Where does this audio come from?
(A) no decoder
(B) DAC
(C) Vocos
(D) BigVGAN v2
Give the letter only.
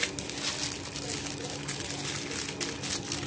A